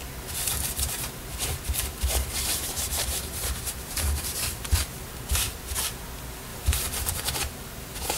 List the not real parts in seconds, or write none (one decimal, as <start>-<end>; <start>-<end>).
0.5-5.4; 6.5-7.1